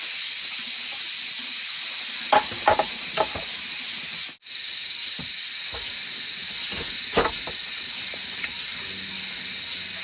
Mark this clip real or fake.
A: real